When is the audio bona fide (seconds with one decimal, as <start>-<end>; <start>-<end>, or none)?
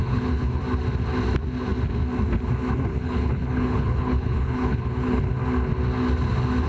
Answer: 0.6-2.9; 5.2-6.7